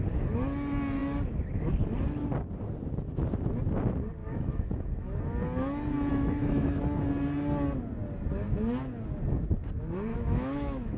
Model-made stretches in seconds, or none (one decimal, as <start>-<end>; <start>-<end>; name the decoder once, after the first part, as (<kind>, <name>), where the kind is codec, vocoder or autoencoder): 4.2-5.2 (autoencoder, DAC-VAE); 6.1-6.8; 10.1-11.0